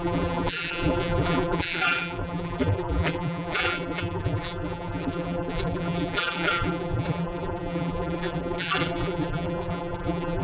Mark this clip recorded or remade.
remade